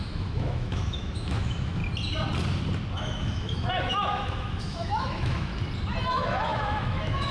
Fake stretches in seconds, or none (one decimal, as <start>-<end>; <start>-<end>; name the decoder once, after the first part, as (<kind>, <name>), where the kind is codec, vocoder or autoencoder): 0.0-1.8 (autoencoder, DAC-VAE); 2.9-5.5; 6.1-7.3